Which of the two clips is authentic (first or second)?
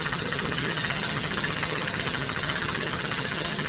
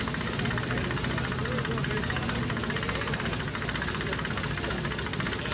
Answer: second